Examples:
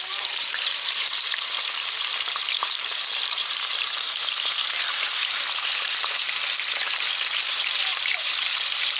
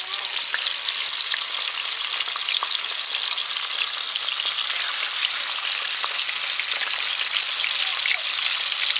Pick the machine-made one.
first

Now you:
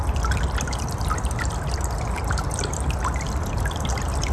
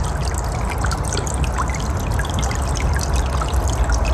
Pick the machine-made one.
first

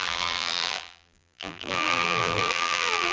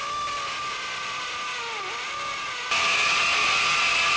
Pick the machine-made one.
first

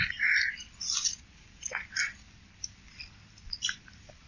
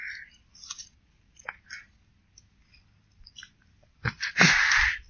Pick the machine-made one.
first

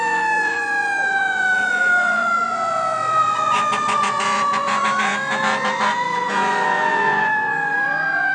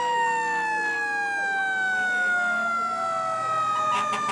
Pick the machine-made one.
first